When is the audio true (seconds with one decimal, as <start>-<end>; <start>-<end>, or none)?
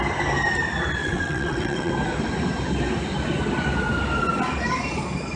0.0-1.0; 1.9-5.4